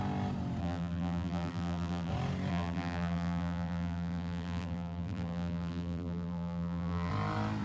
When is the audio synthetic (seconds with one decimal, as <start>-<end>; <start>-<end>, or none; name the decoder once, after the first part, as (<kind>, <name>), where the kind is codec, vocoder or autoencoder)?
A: 0.6-2.1 (vocoder, BigVGAN v2); 2.5-7.1